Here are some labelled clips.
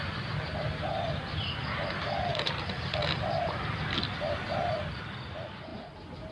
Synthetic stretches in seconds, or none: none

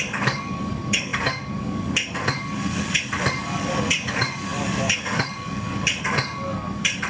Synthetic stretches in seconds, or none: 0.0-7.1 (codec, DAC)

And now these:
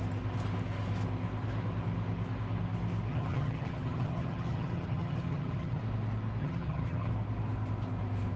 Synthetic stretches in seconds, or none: 3.1-5.8 (vocoder, HiFi-GAN); 6.4-7.1

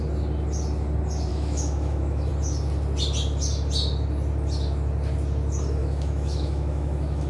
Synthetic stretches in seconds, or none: 1.3-2.3 (autoencoder, DAC-VAE); 5.8-7.3

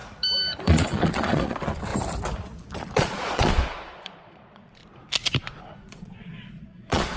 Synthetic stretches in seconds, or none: 0.6-1.9 (vocoder, Vocos); 3.0-4.8; 5.6-7.2

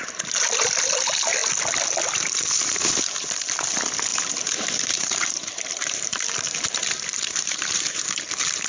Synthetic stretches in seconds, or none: 4.1-8.7 (vocoder, BigVGAN v2)

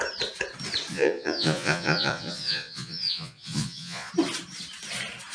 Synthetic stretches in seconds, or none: 0.9-4.1 (vocoder, Vocos)